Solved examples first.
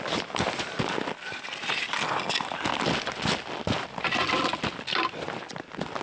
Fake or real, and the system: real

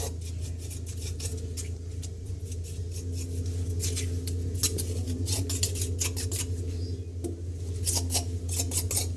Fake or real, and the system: real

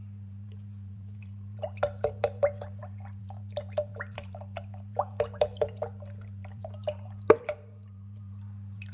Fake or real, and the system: fake, vocoder, BigVGAN v2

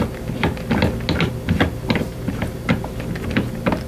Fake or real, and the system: real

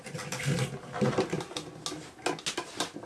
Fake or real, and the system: real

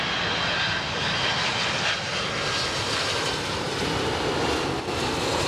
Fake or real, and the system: real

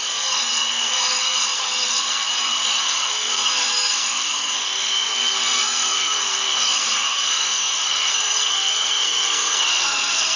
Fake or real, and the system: fake, codec, SNAC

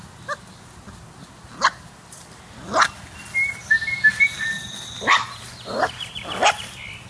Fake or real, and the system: real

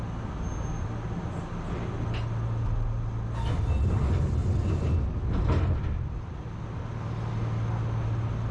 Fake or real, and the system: real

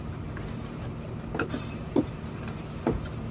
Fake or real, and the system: fake, vocoder, BigVGAN v2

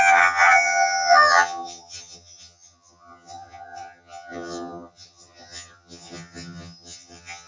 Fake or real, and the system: fake, vocoder, HiFi-GAN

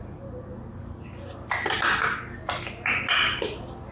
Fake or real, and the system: real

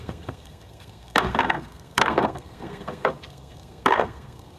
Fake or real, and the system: fake, codec, SNAC